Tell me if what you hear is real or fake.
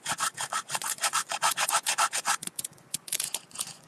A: fake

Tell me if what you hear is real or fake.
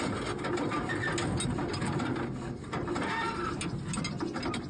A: real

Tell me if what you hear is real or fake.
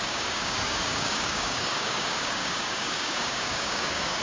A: fake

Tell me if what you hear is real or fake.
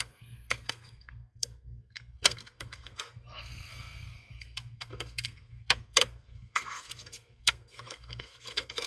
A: fake